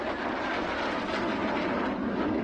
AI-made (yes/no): no